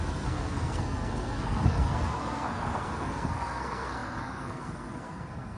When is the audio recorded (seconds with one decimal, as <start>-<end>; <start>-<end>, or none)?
none